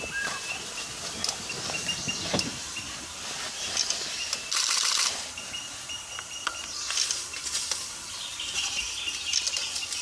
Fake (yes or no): no